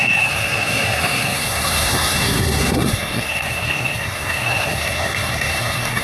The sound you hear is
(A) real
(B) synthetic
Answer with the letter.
B